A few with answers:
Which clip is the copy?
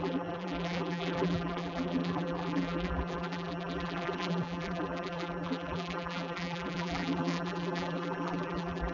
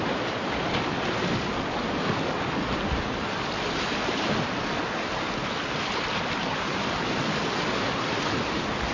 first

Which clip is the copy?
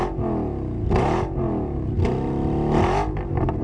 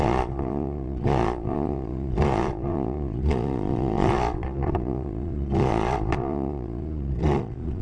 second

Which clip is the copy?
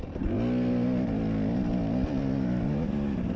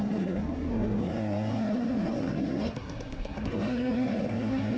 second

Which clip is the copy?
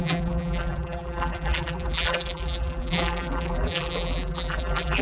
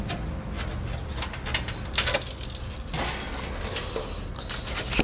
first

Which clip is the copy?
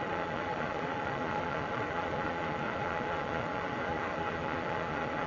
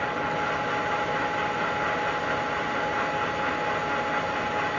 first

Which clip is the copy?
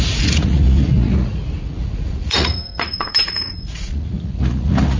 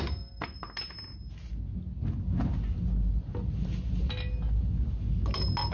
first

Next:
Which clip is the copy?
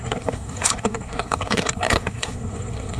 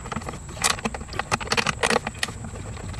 first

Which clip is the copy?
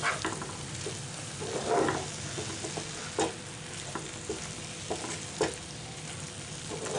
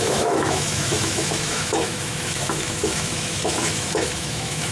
second